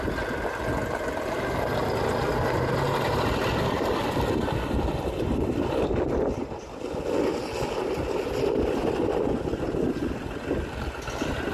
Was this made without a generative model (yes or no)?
yes